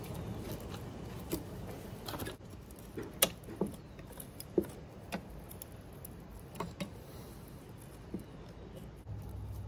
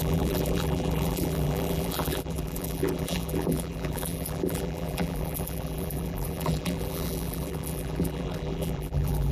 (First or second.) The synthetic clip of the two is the second